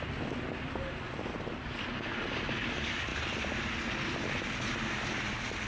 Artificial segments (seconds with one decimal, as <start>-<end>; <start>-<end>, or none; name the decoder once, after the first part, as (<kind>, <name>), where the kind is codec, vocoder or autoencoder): none